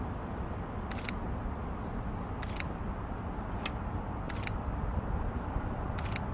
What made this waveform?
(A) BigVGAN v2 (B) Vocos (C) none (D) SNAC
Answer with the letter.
C